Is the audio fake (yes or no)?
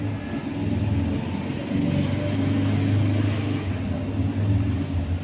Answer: no